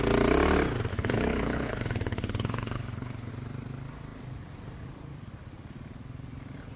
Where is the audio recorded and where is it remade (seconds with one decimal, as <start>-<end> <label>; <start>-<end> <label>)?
0.0-0.9 recorded; 0.9-3.3 remade; 3.3-6.8 recorded